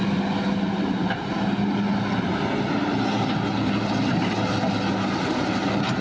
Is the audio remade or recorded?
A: recorded